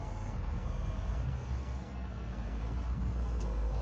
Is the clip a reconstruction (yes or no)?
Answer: yes